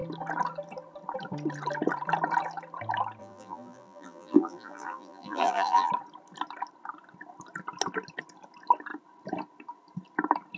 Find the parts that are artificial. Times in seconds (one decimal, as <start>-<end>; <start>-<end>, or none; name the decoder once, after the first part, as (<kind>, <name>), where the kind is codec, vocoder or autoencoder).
3.2-5.9 (vocoder, BigVGAN v2)